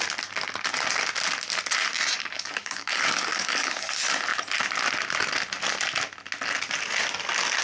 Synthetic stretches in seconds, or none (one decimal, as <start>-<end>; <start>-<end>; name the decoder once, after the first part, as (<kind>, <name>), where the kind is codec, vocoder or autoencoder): 2.2-3.8 (codec, DAC)